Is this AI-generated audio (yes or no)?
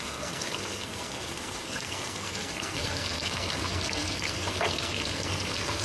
yes